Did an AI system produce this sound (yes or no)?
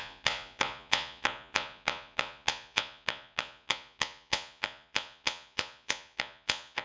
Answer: yes